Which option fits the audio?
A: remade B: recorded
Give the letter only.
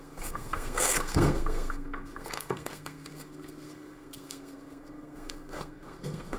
A